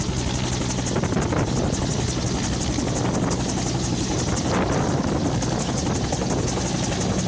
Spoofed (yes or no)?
no